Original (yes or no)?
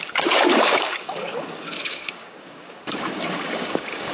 no